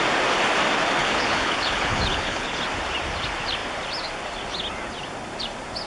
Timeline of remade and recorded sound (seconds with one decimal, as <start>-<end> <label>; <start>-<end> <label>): 0.0-1.0 recorded; 1.0-2.6 remade; 2.6-5.9 recorded